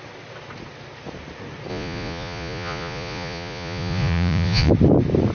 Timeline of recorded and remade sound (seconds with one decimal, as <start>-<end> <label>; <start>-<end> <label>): 0.0-1.7 recorded; 1.7-4.7 remade; 4.7-5.3 recorded